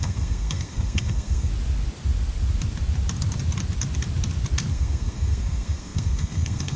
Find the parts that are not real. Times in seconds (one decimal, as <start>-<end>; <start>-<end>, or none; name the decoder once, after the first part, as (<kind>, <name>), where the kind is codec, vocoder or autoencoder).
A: 0.0-1.5 (codec, SNAC); 4.7-6.8